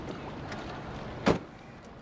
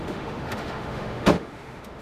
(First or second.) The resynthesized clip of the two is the second